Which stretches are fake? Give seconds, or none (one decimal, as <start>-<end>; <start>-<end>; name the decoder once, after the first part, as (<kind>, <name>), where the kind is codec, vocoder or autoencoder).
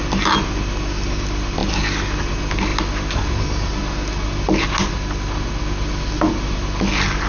none